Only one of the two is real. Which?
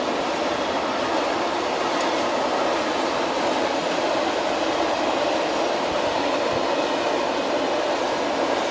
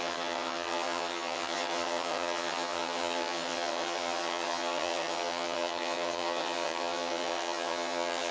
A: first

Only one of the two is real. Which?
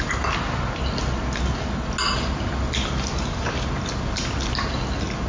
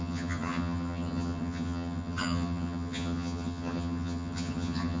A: first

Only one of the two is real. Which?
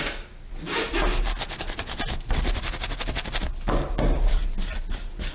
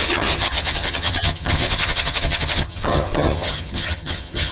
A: first